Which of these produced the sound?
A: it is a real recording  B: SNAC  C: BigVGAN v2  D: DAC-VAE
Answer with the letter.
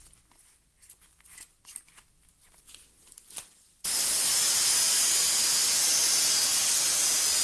A